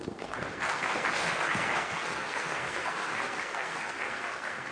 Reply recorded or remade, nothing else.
remade